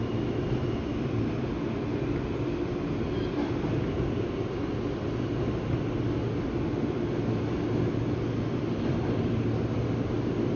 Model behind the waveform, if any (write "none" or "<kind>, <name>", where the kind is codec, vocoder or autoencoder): none